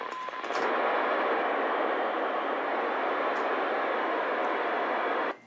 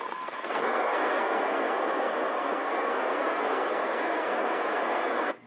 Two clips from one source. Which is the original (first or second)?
first